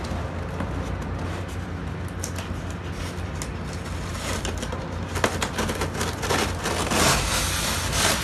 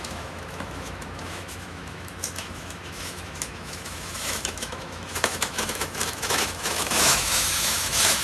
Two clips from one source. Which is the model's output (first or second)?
second